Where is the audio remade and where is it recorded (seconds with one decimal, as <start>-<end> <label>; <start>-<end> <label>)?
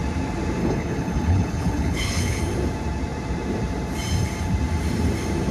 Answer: 0.0-0.6 recorded; 0.6-2.4 remade; 2.4-5.5 recorded